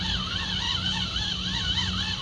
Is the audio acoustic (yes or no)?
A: yes